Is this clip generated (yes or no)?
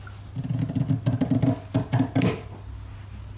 no